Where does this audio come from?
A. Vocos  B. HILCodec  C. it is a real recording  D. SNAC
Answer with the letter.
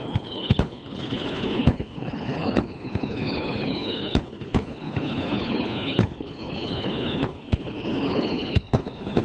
B